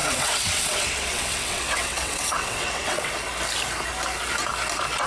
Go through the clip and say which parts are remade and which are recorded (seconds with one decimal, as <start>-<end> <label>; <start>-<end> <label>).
0.0-3.1 remade; 3.1-5.1 recorded